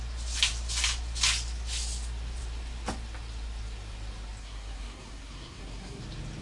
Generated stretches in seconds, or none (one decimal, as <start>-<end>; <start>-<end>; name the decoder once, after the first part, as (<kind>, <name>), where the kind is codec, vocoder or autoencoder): 4.4-6.0 (codec, SNAC)